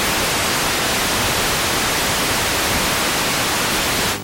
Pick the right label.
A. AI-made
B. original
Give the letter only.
B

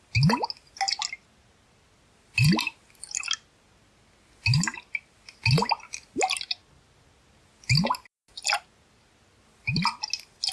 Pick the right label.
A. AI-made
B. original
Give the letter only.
B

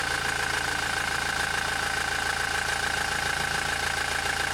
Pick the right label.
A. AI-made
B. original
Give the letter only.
B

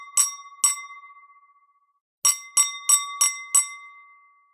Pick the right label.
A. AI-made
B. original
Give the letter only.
B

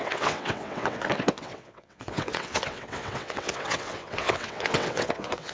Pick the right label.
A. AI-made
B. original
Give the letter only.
A